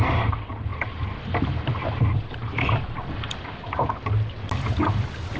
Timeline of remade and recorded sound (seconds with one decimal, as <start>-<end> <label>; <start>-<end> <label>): 0.0-5.4 recorded